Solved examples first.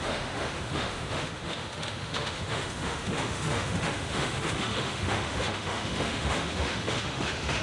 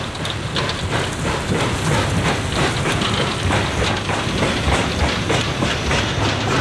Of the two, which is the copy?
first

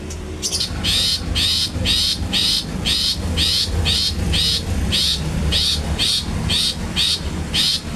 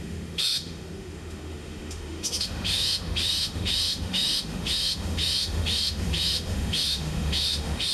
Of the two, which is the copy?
second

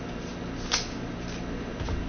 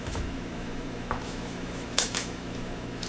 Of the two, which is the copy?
second